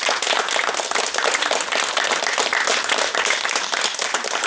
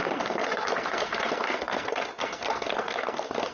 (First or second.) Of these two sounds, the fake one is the second